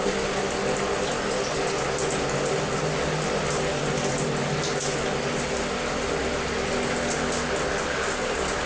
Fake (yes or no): no